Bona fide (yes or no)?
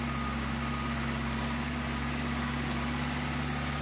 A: yes